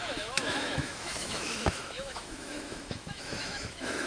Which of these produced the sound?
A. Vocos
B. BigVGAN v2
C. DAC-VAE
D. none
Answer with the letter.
C